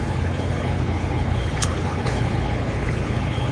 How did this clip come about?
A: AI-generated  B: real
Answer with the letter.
A